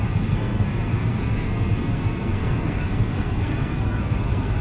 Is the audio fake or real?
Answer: fake